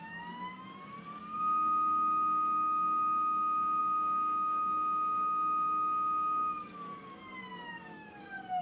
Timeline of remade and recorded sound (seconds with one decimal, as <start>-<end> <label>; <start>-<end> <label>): 0.0-8.6 remade